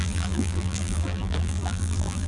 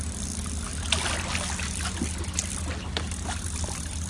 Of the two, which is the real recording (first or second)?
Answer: second